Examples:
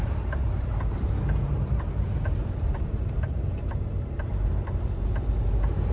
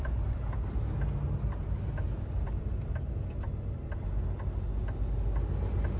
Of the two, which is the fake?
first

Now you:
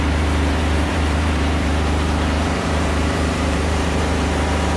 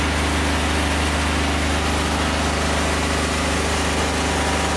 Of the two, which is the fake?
first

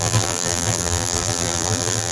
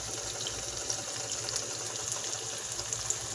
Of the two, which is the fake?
first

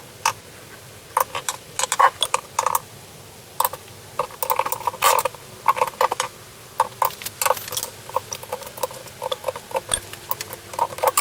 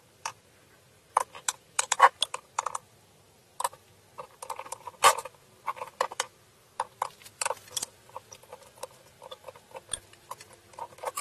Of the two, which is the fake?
second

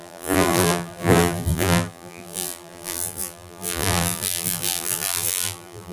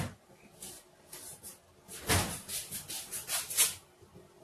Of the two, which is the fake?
first